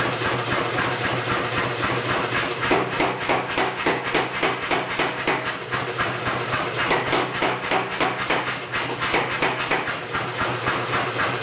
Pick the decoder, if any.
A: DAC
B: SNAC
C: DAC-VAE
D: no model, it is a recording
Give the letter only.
D